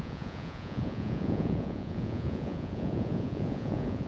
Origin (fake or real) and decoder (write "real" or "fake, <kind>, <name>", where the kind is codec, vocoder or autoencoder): fake, vocoder, Vocos